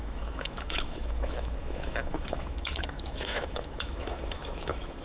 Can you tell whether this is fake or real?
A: fake